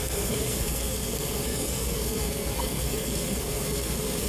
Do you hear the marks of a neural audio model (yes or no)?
yes